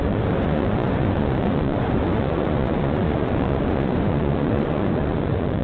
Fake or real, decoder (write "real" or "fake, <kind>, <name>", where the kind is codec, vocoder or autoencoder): fake, vocoder, Vocos